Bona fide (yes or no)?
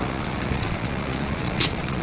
no